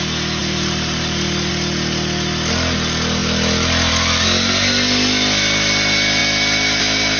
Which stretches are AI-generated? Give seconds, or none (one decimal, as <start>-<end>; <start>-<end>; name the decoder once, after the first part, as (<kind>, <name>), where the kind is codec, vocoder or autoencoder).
0.4-1.5 (vocoder, BigVGAN v2)